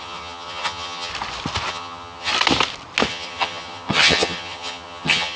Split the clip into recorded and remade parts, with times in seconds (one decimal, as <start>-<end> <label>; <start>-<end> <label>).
0.0-1.1 remade; 1.1-1.7 recorded; 1.7-2.3 remade; 2.3-3.1 recorded; 3.1-5.4 remade